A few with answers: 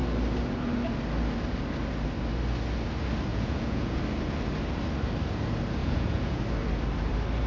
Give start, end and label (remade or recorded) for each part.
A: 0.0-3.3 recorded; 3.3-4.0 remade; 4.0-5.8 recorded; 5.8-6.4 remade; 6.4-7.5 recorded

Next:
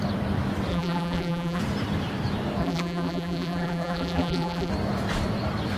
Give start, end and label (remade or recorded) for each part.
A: 0.0-0.7 recorded; 0.7-1.6 remade; 1.6-2.6 recorded; 2.6-4.7 remade; 4.7-5.8 recorded

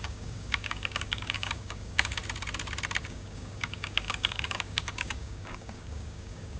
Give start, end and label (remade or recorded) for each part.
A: 0.0-2.2 remade; 2.2-3.0 recorded; 3.0-6.6 remade

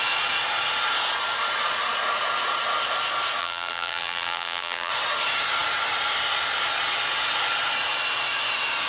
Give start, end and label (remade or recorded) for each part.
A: 0.0-3.4 recorded; 3.4-4.9 remade; 4.9-8.9 recorded

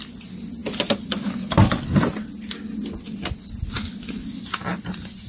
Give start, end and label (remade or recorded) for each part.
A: 0.0-5.3 recorded